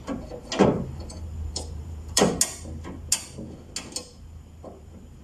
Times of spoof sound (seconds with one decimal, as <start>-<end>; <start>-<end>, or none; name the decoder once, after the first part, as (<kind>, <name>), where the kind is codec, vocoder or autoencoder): 0.6-2.3 (vocoder, BigVGAN v2); 4.0-5.2